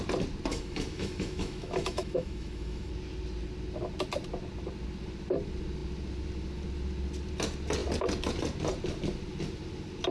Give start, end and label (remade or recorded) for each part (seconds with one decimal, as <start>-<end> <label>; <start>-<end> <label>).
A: 0.0-0.5 recorded; 0.5-2.9 remade; 2.9-10.1 recorded